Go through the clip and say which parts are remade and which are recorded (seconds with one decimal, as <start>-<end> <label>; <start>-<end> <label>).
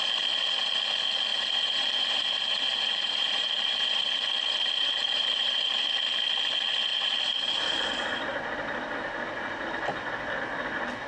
0.0-1.3 recorded; 1.3-5.9 remade; 5.9-6.9 recorded; 6.9-7.8 remade; 7.8-11.1 recorded